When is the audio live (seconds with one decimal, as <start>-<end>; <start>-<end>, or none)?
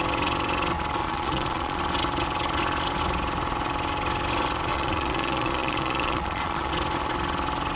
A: 0.0-1.0; 1.8-4.7; 6.7-7.8